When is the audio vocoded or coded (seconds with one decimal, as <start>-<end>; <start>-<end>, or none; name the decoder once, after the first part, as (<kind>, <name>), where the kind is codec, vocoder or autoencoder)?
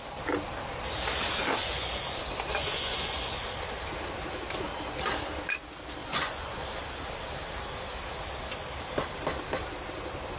1.6-2.3 (vocoder, Vocos); 2.7-3.4; 6.0-6.8